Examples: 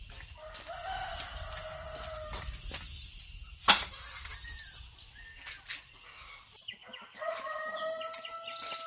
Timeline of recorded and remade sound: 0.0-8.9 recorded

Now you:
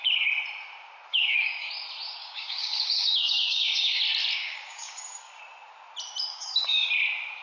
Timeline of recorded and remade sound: 0.0-1.1 recorded; 1.1-1.7 remade; 1.7-2.2 recorded; 2.2-4.0 remade; 4.0-4.4 recorded; 4.4-5.4 remade; 5.4-6.3 recorded; 6.3-6.9 remade; 6.9-7.4 recorded

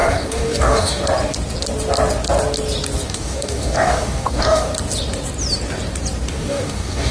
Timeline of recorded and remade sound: 0.0-1.0 remade; 1.0-3.1 recorded; 3.1-4.7 remade; 4.7-6.3 recorded; 6.3-7.1 remade

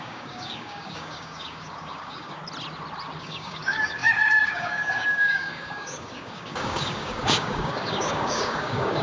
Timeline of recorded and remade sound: 0.0-2.4 remade; 2.4-3.2 recorded; 3.2-9.0 remade